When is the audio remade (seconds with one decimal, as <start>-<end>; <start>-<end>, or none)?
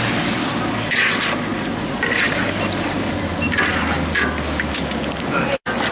none